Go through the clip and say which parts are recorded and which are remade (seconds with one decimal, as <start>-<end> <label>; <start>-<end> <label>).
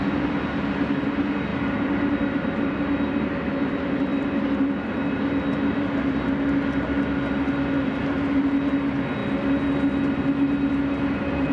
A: 0.0-11.5 recorded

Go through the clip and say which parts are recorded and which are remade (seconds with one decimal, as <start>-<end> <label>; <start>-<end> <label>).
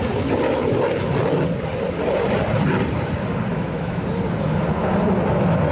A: 0.0-3.5 recorded; 3.5-4.0 remade; 4.0-5.7 recorded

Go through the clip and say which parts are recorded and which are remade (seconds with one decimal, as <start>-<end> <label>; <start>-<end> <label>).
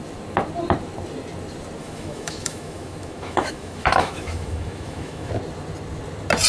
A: 0.0-1.8 recorded; 1.8-5.3 remade; 5.3-6.5 recorded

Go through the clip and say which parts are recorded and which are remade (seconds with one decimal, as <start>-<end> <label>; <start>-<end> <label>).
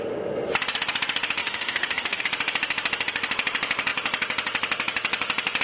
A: 0.0-1.4 recorded; 1.4-2.2 remade; 2.2-5.6 recorded